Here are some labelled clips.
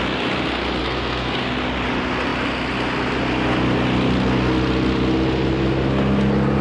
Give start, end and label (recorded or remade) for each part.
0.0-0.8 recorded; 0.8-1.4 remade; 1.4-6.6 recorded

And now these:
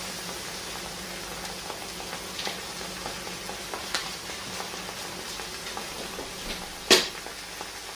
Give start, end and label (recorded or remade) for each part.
0.0-3.8 recorded; 3.8-4.4 remade; 4.4-7.9 recorded

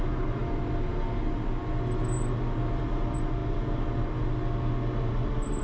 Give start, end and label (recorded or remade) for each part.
0.0-5.6 recorded